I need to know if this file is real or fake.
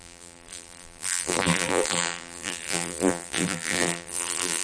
fake